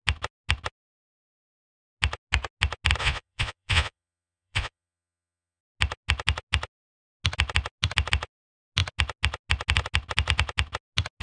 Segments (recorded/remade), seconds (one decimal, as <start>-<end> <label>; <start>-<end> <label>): 0.0-3.0 recorded; 3.0-5.6 remade; 5.6-11.2 recorded

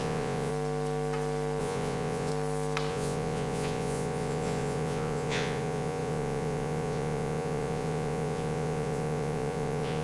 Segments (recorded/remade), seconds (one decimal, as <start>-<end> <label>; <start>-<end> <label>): 0.0-0.5 remade; 0.5-1.6 recorded; 1.6-2.3 remade; 2.3-2.9 recorded; 2.9-10.0 remade